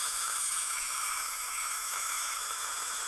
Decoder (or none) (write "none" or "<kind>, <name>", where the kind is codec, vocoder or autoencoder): autoencoder, DAC-VAE